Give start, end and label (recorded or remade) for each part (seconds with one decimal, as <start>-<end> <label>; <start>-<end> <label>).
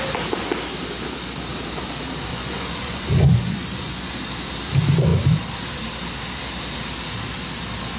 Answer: 0.0-2.3 recorded; 2.3-4.1 remade; 4.1-8.0 recorded